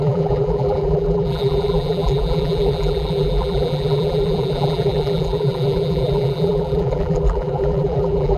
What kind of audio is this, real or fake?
fake